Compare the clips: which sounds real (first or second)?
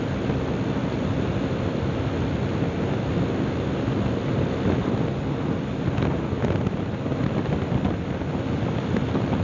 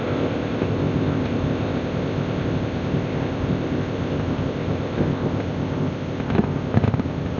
first